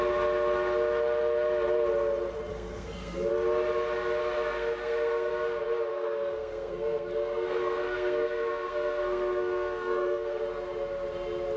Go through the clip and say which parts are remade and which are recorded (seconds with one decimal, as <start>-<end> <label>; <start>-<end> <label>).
0.0-2.5 recorded; 2.5-3.3 remade; 3.3-4.2 recorded; 4.2-5.3 remade; 5.3-5.9 recorded; 5.9-10.4 remade; 10.4-11.6 recorded